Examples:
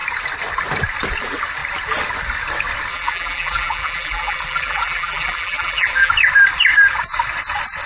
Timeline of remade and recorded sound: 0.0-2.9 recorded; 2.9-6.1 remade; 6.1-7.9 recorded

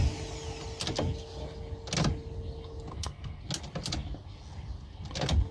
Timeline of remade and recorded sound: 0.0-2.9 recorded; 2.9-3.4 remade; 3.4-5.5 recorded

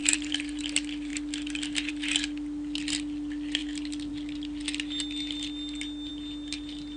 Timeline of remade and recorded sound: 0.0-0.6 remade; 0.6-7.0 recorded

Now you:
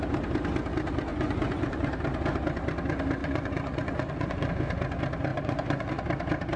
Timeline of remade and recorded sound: 0.0-1.1 recorded; 1.1-1.9 remade; 1.9-3.2 recorded; 3.2-4.5 remade; 4.5-5.3 recorded; 5.3-5.9 remade; 5.9-6.6 recorded